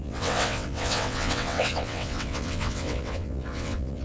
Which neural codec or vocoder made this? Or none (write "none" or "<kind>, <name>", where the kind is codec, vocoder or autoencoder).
vocoder, WaveNeXt